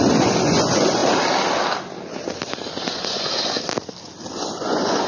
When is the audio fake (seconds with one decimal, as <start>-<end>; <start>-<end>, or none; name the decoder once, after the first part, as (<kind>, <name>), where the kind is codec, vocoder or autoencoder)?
0.0-1.0 (vocoder, Vocos); 2.9-3.3; 4.3-5.1